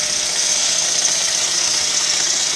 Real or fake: fake